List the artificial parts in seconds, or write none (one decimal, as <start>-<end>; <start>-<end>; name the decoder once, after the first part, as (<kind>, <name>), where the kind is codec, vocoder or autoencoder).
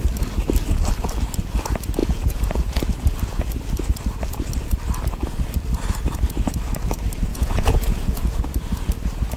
2.0-2.8 (vocoder, Vocos); 7.3-8.4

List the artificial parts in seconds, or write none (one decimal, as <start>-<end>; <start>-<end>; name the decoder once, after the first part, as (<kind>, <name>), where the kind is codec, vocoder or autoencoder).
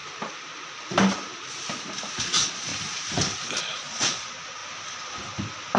2.2-2.7 (vocoder, Vocos); 3.6-4.6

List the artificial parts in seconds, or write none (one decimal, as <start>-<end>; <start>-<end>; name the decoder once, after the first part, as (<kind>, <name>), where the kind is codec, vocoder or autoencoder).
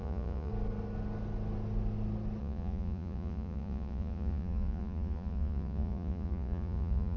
0.0-0.5 (vocoder, Vocos); 2.4-7.2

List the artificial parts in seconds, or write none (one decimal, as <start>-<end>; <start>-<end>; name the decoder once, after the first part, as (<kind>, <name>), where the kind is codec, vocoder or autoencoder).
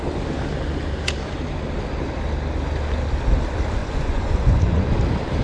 3.8-4.9 (vocoder, Vocos)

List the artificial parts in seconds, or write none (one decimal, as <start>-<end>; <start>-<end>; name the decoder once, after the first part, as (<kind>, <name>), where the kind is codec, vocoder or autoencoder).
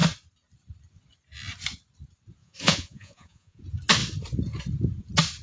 2.4-3.6 (vocoder, Vocos)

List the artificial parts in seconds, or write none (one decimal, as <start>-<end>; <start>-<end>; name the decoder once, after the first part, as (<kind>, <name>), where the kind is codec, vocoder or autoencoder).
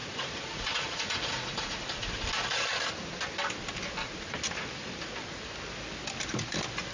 0.0-1.8 (vocoder, Vocos)